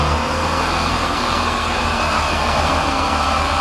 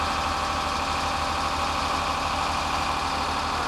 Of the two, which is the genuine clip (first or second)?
second